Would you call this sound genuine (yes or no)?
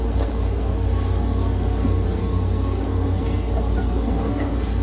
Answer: no